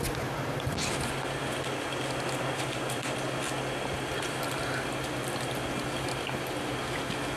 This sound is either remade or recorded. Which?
recorded